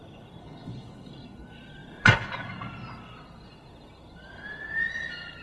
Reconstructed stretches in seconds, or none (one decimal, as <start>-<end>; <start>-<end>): 0.4-1.1